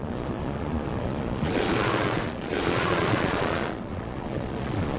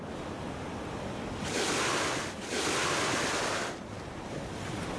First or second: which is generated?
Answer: first